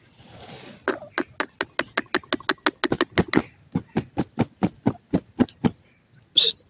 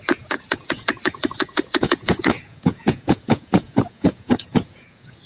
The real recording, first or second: first